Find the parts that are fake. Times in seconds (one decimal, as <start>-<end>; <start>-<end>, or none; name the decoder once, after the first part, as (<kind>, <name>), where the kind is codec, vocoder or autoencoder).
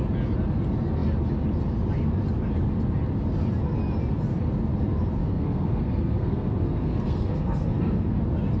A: 5.2-8.2 (codec, SNAC)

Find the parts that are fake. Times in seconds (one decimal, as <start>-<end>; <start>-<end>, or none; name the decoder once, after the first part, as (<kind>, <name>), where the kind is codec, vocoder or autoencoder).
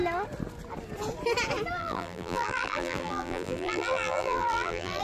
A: 1.8-5.0 (vocoder, BigVGAN v2)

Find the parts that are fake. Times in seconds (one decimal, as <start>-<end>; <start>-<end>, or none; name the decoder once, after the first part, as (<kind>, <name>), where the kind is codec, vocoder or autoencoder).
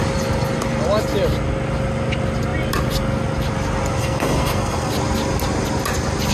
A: 4.0-4.9 (codec, SNAC)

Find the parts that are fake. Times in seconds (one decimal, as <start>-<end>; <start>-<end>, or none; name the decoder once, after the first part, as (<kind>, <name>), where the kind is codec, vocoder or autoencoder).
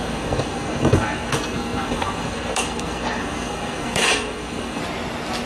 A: 0.0-4.8 (codec, SNAC)